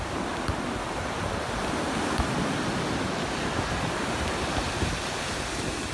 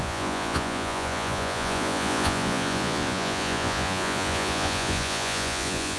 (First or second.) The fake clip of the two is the second